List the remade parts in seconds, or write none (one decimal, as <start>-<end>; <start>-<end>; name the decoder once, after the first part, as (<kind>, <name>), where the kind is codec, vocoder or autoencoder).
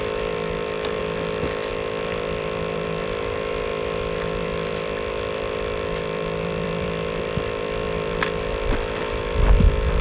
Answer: 0.0-1.0 (vocoder, BigVGAN v2); 1.7-10.0